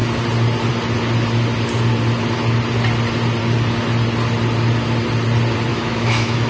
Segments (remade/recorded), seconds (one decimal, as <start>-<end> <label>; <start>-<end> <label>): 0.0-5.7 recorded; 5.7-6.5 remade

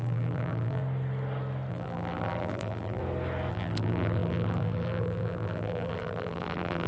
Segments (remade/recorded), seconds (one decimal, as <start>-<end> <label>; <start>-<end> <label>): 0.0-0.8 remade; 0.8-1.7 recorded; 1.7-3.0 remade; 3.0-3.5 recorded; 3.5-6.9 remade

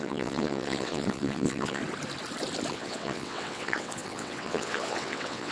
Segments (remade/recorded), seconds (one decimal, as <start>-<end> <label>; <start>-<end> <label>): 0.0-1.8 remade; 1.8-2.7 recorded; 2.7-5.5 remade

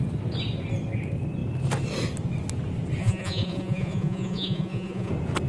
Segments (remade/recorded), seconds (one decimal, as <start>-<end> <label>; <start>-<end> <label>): 0.0-3.0 recorded; 3.0-5.1 remade; 5.1-5.5 recorded